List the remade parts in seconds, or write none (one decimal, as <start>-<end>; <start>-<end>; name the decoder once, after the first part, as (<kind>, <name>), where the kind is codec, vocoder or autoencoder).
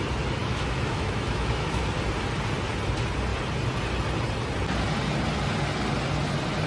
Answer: 0.4-1.8 (autoencoder, DAC-VAE)